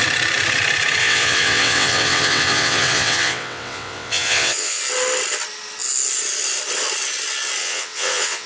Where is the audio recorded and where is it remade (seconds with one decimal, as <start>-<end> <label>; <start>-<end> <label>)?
0.0-1.0 recorded; 1.0-4.8 remade; 4.8-7.6 recorded; 7.6-8.5 remade